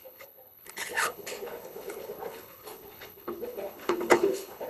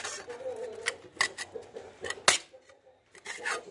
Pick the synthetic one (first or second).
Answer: first